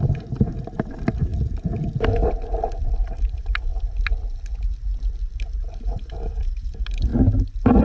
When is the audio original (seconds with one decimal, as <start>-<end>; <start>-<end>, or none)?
1.3-2.9; 3.7-5.8; 7.1-7.8